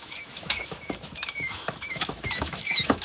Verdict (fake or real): fake